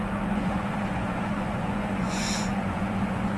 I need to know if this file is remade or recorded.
remade